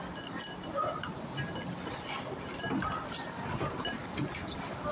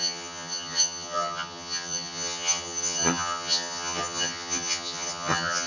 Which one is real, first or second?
first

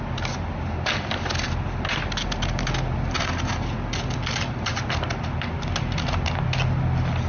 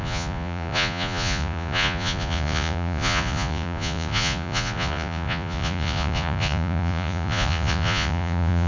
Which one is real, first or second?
first